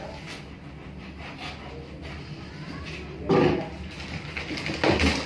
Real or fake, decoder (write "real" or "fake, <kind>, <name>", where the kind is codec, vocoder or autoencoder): real